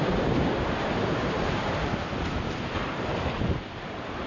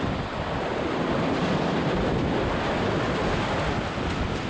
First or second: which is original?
second